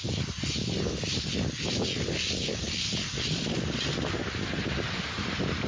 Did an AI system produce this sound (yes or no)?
no